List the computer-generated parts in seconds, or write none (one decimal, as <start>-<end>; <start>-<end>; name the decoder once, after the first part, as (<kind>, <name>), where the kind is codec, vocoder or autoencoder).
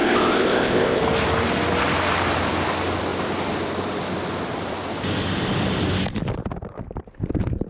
0.0-1.0 (codec, ZipCodec)